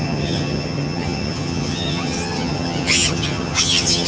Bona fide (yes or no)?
no